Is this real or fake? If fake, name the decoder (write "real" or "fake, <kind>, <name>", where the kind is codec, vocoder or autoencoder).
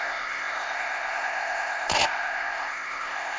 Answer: fake, codec, ZipCodec